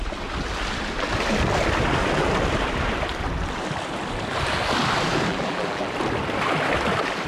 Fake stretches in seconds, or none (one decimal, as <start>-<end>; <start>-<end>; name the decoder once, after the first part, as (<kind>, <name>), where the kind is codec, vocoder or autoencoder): 5.3-5.9 (vocoder, BigVGAN v2)